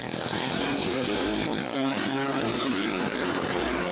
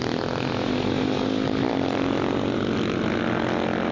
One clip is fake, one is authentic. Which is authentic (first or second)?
second